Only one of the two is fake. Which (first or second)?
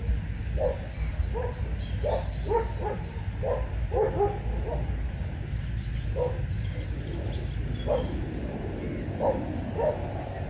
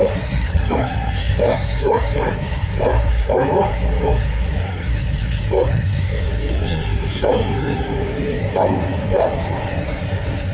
second